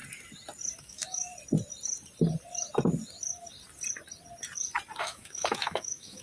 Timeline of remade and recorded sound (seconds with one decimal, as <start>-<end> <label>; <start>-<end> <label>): 0.0-0.8 recorded; 0.8-1.3 remade; 1.3-5.0 recorded; 5.0-6.2 remade